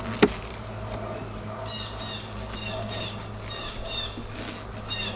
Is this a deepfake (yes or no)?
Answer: no